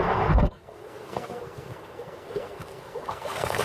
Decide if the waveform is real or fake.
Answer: fake